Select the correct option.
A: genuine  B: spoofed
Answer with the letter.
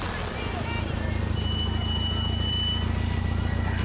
A